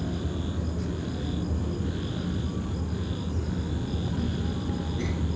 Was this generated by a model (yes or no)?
no